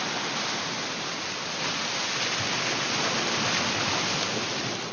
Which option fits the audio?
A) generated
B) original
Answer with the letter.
B